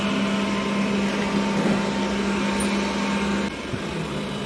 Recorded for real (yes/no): yes